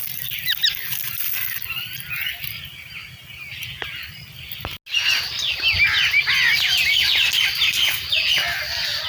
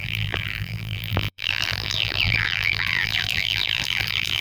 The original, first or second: first